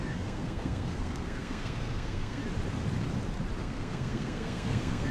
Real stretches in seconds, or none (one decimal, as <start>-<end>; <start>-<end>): 2.4-3.6